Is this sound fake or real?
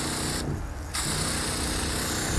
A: real